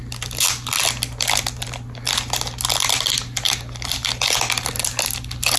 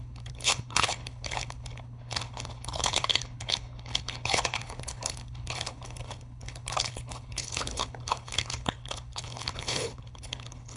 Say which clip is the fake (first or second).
second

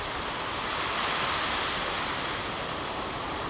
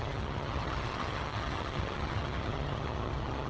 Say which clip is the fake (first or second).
second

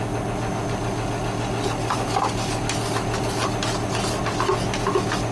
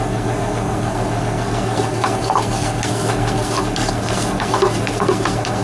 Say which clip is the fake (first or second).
second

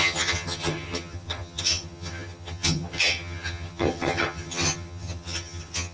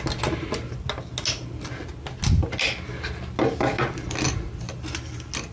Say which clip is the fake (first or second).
first